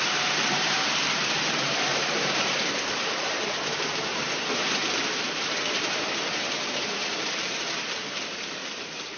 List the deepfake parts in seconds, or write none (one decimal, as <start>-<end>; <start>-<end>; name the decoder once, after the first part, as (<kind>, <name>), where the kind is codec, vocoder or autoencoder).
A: 0.0-9.2 (vocoder, BigVGAN v2)